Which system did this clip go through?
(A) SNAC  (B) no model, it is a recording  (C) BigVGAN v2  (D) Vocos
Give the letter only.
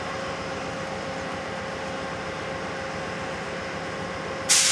B